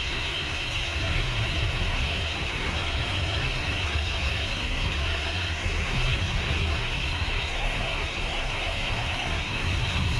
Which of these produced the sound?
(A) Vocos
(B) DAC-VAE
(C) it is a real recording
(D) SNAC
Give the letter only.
D